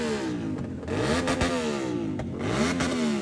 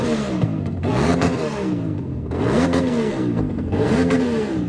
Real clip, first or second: first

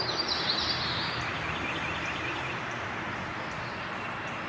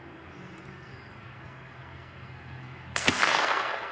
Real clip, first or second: first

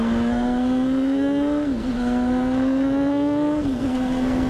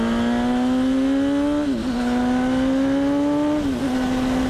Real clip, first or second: second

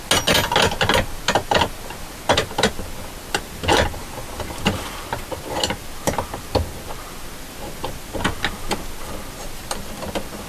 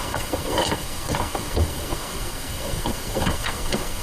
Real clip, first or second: first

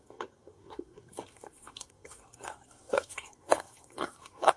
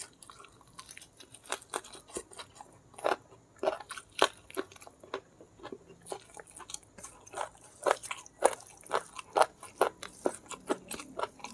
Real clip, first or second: second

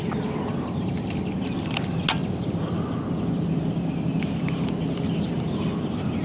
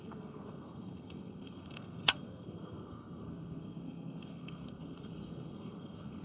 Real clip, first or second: first